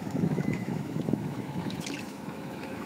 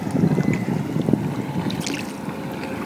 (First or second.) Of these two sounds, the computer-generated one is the first